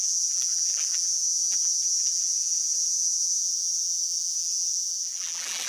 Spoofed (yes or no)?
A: yes